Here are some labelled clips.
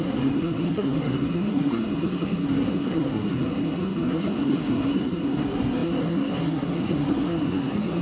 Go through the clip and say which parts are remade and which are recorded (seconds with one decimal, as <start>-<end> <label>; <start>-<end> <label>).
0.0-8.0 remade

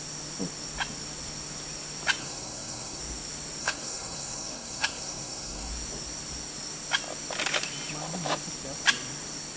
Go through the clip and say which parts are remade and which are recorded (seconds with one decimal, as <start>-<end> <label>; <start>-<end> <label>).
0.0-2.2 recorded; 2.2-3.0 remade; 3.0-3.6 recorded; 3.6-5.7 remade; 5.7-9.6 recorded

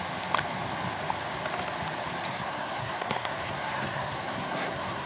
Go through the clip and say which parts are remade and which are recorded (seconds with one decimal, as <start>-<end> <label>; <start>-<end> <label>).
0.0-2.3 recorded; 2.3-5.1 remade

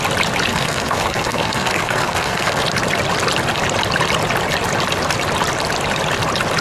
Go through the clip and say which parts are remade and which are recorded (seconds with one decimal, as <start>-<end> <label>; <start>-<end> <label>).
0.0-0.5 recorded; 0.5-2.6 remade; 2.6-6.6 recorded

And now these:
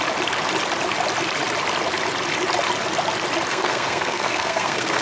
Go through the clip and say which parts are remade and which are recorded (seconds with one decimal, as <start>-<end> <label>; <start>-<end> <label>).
0.0-3.5 recorded; 3.5-5.0 remade

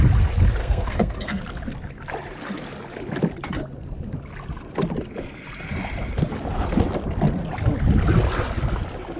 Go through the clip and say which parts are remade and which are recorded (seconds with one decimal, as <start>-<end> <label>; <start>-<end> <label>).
0.0-0.6 recorded; 0.6-1.4 remade; 1.4-9.2 recorded

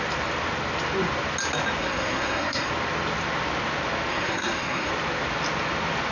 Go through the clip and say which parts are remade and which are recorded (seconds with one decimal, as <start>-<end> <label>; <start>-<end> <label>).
0.0-1.8 recorded; 1.8-2.7 remade; 2.7-4.1 recorded; 4.1-4.9 remade; 4.9-6.1 recorded

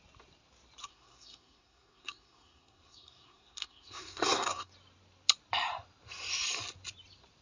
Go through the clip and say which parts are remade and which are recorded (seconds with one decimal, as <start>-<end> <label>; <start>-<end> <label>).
0.0-0.8 recorded; 0.8-4.7 remade; 4.7-7.4 recorded